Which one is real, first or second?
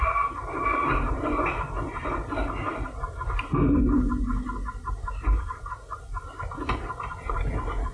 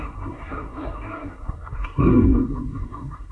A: first